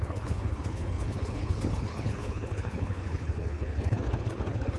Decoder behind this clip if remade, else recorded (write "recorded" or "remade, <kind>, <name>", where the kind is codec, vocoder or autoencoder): remade, codec, HILCodec